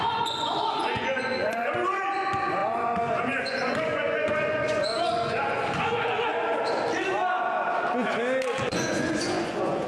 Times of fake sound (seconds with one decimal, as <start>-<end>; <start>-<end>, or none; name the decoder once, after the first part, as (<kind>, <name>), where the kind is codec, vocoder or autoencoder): 0.0-6.3 (vocoder, Vocos); 8.6-9.9